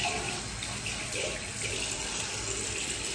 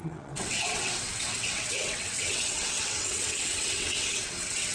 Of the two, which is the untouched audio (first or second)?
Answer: first